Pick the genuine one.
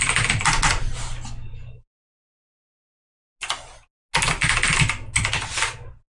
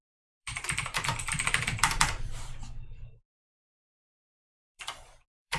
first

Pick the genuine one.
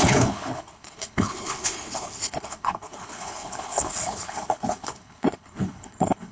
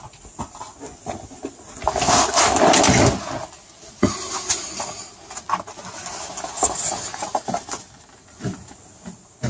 second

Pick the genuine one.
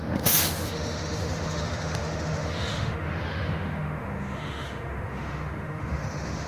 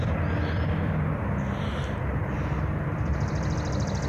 second